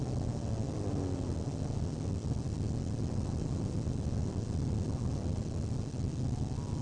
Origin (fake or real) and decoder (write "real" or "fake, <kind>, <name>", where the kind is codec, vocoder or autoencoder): real